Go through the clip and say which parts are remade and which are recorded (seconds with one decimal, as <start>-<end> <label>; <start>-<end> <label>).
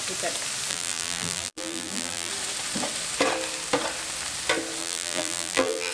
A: 0.0-0.7 recorded; 0.7-2.3 remade; 2.3-4.8 recorded; 4.8-5.9 remade